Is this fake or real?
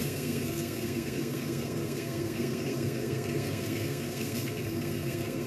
fake